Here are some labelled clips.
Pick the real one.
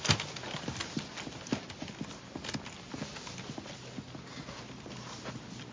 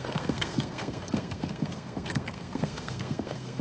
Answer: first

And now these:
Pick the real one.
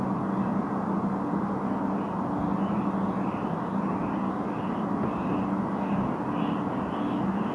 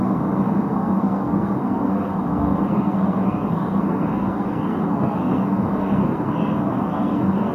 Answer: first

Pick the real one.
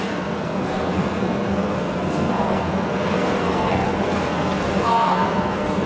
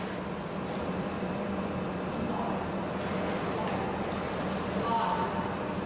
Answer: second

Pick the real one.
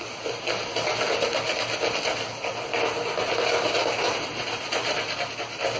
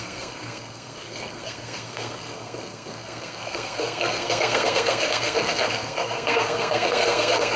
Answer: first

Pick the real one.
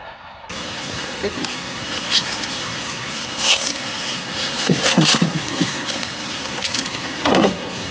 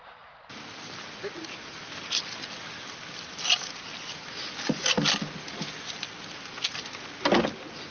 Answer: second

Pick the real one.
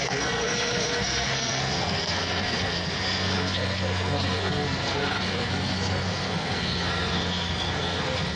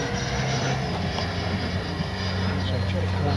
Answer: second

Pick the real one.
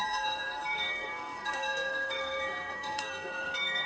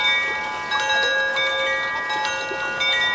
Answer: second